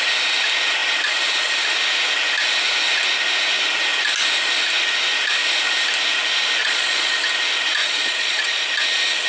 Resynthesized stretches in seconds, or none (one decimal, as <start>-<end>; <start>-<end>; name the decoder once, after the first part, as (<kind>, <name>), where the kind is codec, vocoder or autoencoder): 6.6-7.2 (vocoder, Vocos); 7.8-8.7